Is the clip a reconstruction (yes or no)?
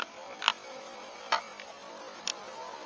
no